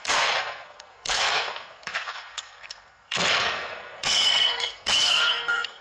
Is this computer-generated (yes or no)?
yes